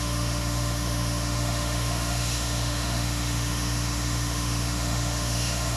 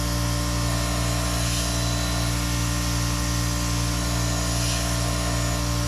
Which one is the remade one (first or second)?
first